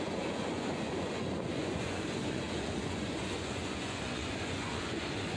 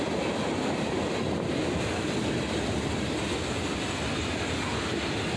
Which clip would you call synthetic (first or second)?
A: first